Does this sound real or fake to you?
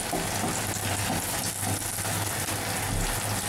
real